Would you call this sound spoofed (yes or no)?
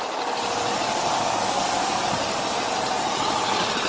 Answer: no